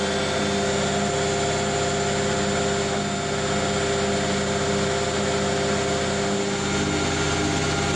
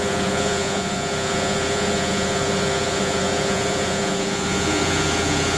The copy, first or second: second